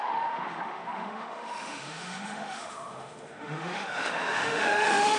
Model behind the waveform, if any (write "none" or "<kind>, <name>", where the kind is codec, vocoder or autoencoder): autoencoder, DAC-VAE